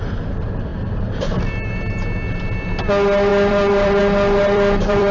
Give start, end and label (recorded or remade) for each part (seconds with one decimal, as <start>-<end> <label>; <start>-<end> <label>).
0.0-0.7 recorded; 0.7-1.3 remade; 1.3-3.3 recorded; 3.3-4.0 remade; 4.0-4.4 recorded; 4.4-5.1 remade

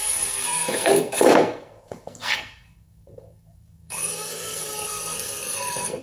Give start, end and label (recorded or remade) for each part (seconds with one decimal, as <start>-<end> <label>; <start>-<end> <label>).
0.0-6.0 remade

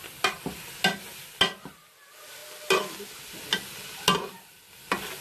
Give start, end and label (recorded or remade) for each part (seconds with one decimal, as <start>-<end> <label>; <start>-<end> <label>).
0.0-5.2 recorded

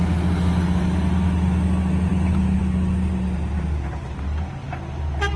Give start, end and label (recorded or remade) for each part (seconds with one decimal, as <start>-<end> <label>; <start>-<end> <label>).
0.0-5.4 recorded

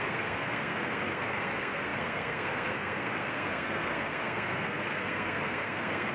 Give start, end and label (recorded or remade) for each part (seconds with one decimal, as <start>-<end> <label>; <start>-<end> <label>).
0.0-6.1 remade

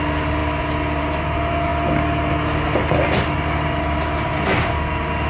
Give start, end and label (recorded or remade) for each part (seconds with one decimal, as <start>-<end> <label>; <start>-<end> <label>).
0.0-5.3 recorded

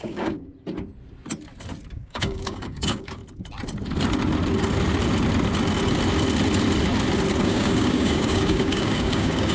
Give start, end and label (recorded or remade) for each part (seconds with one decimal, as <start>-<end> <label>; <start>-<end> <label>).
0.0-0.5 remade; 0.5-1.9 recorded; 1.9-3.2 remade; 3.2-7.4 recorded; 7.4-9.5 remade

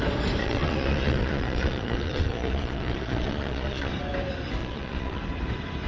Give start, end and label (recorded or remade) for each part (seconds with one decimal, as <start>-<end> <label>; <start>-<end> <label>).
0.0-0.4 recorded; 0.4-3.9 remade; 3.9-4.6 recorded; 4.6-5.2 remade; 5.2-5.9 recorded